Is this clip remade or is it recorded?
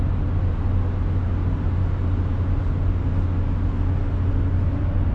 recorded